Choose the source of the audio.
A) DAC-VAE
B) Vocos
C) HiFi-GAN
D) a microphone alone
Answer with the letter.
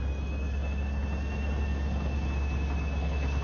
D